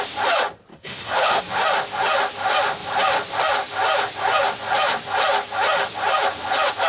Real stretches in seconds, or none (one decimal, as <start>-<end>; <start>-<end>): 0.0-0.7; 1.4-6.9